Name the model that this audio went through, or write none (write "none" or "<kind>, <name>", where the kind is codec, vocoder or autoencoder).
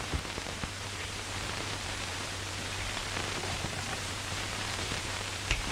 vocoder, BigVGAN v2